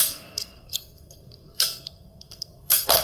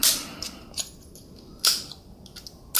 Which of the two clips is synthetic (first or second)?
first